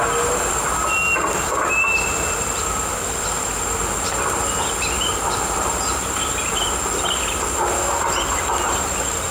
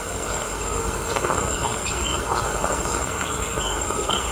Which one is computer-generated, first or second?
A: second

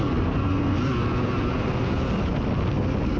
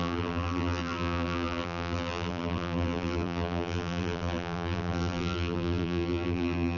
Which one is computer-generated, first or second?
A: second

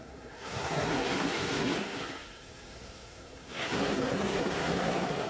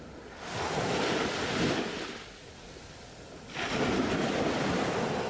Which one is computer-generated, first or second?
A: first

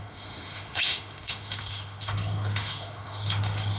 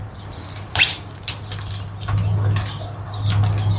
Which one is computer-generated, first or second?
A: first